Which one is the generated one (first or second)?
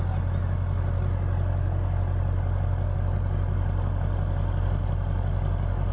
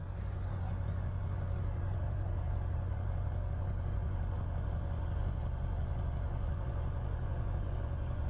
second